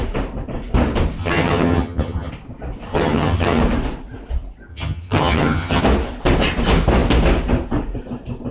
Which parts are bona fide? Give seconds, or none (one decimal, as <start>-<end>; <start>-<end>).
0.0-1.2; 2.3-2.9; 3.6-4.7; 5.8-8.5